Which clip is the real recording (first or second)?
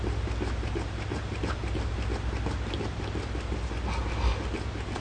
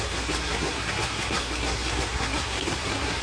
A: first